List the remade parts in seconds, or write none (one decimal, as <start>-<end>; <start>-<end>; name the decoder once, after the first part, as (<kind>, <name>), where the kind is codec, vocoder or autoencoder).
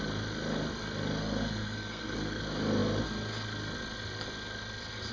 1.2-2.4 (codec, SNAC)